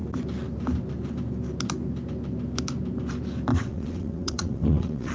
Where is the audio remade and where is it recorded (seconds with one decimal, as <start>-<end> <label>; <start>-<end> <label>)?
0.0-3.5 recorded; 3.5-5.1 remade